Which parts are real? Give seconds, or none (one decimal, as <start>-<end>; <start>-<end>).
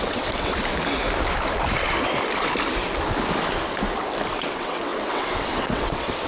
0.5-4.3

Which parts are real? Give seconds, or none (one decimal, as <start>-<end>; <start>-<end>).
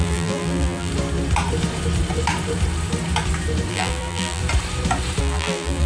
0.9-3.7; 4.4-5.2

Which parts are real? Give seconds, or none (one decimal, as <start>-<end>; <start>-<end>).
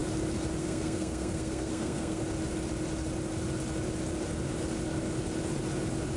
0.0-0.6; 2.2-6.2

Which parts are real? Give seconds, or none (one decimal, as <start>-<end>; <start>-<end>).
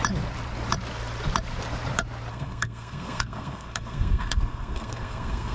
0.0-2.3